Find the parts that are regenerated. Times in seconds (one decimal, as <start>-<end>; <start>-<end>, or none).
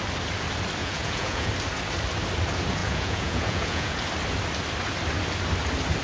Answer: 0.8-1.5; 2.8-4.0